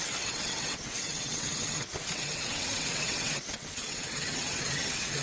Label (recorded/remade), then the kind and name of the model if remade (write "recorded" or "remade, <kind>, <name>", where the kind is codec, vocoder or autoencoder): remade, vocoder, WaveNeXt